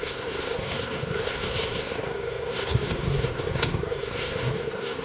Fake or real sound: fake